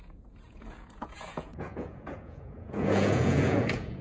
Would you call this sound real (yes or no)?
no